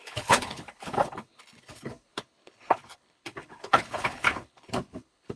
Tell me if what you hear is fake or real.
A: fake